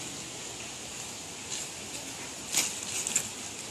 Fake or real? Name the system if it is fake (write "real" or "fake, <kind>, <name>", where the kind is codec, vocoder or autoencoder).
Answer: real